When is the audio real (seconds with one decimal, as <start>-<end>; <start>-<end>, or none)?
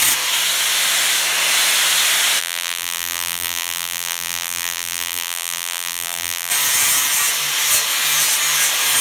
0.0-2.4; 6.5-9.0